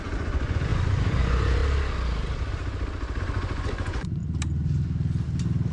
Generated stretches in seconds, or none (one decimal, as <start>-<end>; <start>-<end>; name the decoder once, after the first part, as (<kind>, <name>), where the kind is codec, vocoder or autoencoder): 0.0-1.6 (vocoder, Vocos); 3.2-4.2